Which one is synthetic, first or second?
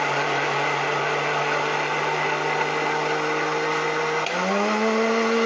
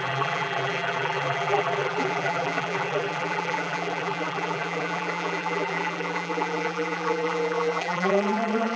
second